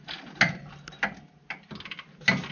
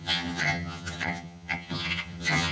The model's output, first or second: second